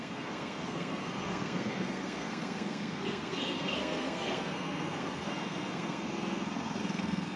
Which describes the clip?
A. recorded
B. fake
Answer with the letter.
B